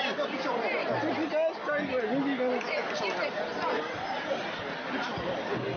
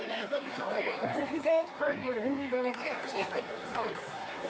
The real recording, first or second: first